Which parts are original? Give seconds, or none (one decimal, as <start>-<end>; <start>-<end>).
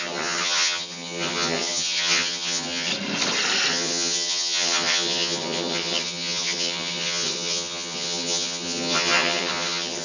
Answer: 2.9-3.7